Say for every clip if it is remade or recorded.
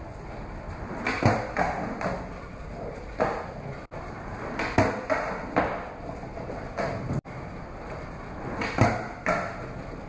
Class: recorded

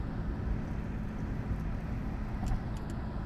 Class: recorded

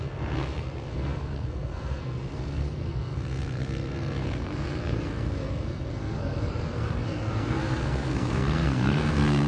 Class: remade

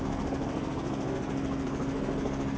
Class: remade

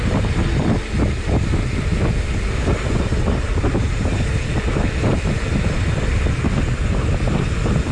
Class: recorded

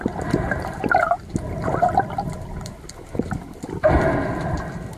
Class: recorded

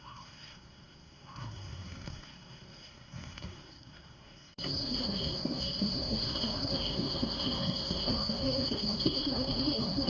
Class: remade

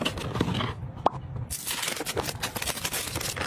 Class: recorded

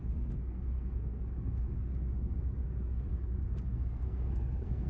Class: remade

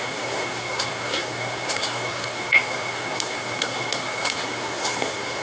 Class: remade